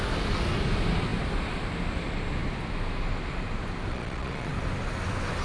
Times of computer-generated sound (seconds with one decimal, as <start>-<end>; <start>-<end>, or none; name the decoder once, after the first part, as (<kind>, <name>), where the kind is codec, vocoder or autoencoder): 3.9-4.5 (vocoder, Vocos)